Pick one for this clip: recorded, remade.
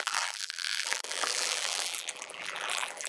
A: remade